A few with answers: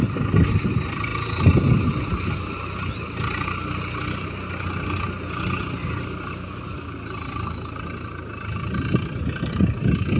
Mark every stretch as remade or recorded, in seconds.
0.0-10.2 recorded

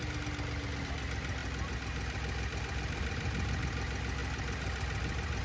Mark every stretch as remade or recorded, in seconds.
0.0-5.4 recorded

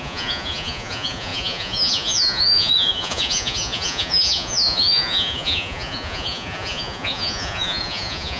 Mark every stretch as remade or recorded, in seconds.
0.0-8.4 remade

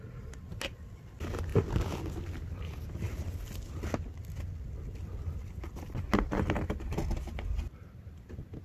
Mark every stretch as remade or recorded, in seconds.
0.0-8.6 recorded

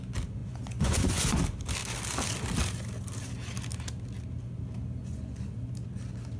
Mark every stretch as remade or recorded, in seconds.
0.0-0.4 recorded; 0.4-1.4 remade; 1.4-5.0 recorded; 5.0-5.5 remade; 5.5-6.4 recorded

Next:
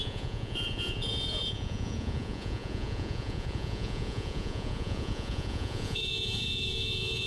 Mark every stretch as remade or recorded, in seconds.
0.0-7.3 remade

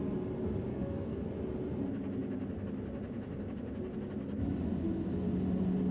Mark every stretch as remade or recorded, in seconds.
0.0-0.7 recorded; 0.7-1.3 remade; 1.3-5.9 recorded

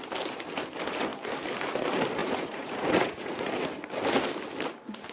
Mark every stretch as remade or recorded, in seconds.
0.0-2.2 recorded; 2.2-3.5 remade; 3.5-5.1 recorded